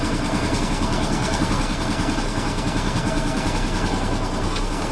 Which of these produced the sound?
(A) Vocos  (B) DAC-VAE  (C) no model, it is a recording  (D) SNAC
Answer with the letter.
D